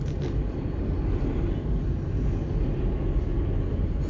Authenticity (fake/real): real